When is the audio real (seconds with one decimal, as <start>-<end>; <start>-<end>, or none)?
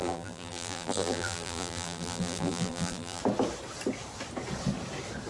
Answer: 3.2-5.3